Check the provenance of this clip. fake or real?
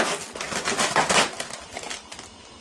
real